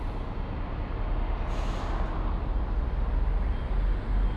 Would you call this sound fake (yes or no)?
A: no